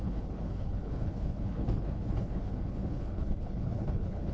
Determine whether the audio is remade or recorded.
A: remade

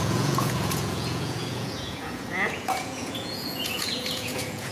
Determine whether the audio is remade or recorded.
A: remade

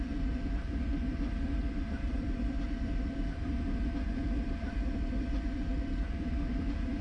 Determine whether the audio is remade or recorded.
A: remade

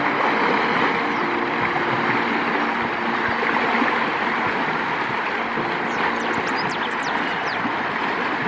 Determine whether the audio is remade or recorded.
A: recorded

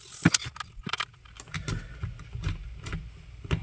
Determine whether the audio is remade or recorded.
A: recorded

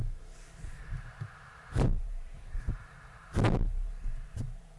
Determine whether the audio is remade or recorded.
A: remade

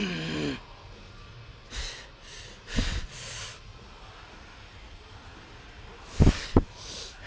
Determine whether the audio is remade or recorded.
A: recorded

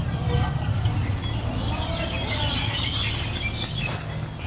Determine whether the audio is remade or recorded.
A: recorded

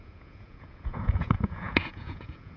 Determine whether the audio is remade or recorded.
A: remade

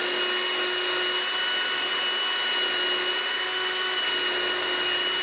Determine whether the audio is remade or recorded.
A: recorded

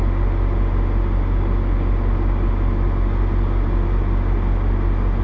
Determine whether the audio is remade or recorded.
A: recorded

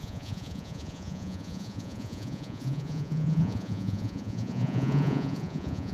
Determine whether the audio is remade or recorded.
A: remade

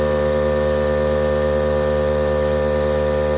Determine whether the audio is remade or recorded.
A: remade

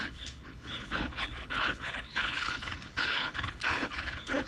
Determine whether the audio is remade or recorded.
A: remade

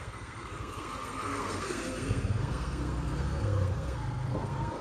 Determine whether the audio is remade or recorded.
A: remade